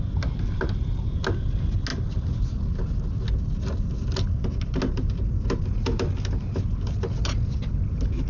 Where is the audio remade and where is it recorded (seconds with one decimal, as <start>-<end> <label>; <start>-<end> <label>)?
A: 0.0-8.3 recorded